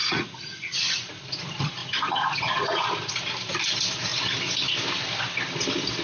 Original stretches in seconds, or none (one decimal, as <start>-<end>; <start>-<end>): 1.1-1.8; 2.9-6.0